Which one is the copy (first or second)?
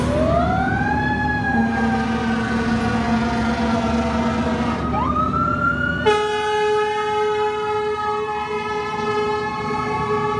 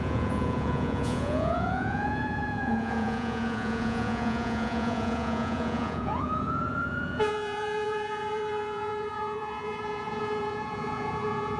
second